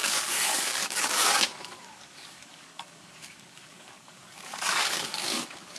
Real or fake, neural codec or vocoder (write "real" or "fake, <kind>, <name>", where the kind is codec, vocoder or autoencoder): fake, codec, DAC